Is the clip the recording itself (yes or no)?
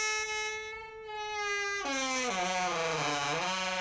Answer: yes